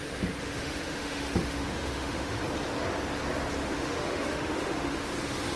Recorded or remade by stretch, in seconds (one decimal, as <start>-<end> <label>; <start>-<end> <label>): 0.0-2.4 remade; 2.4-3.6 recorded; 3.6-5.1 remade; 5.1-5.6 recorded

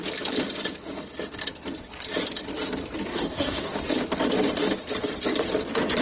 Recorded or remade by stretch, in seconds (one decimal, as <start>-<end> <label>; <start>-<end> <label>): 0.0-3.1 recorded; 3.1-3.8 remade; 3.8-6.0 recorded